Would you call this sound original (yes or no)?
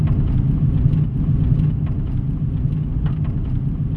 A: yes